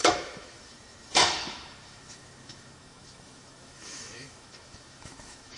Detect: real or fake fake